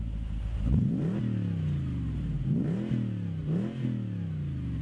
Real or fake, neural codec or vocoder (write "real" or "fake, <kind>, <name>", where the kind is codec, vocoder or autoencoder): real